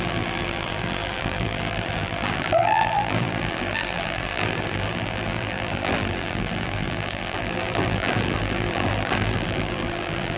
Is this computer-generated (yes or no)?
yes